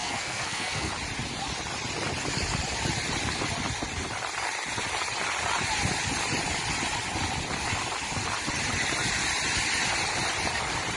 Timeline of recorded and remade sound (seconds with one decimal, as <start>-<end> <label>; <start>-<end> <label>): 0.0-0.9 remade; 0.9-11.0 recorded